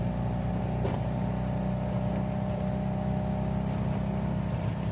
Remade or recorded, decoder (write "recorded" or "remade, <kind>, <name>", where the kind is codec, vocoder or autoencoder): recorded